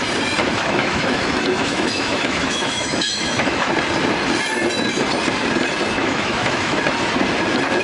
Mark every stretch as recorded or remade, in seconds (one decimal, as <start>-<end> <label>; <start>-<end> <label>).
0.0-0.4 recorded; 0.4-3.7 remade; 3.7-6.0 recorded; 6.0-6.8 remade; 6.8-7.8 recorded